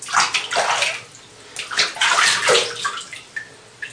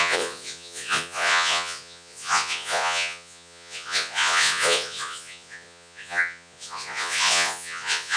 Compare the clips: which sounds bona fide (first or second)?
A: first